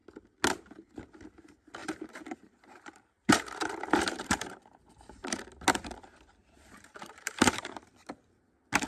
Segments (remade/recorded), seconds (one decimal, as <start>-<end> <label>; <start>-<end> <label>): 0.0-1.8 recorded; 1.8-5.4 remade; 5.4-6.4 recorded; 6.4-7.9 remade; 7.9-8.9 recorded